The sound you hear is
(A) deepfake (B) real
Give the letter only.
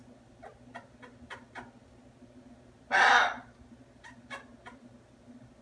B